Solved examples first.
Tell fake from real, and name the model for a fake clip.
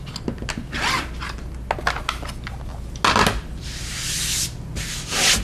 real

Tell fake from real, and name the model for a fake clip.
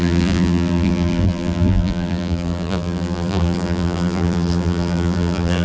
fake, vocoder, BigVGAN v2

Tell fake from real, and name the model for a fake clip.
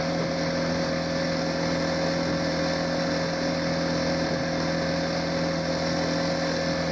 real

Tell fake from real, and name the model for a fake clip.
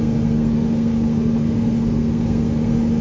fake, codec, SNAC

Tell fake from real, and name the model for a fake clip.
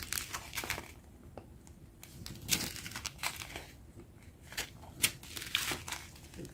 real